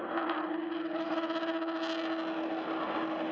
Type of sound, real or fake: real